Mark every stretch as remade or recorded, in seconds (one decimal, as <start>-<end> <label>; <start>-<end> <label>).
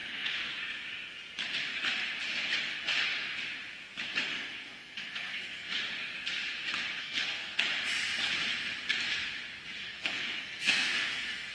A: 0.0-0.5 remade; 0.5-4.3 recorded; 4.3-5.8 remade; 5.8-7.0 recorded; 7.0-7.6 remade; 7.6-9.8 recorded; 9.8-11.5 remade